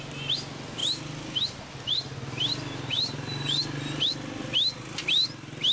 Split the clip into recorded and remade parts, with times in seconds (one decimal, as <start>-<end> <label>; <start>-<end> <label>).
0.0-5.7 recorded